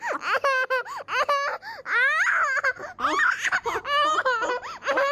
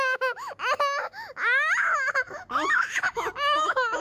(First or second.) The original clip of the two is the first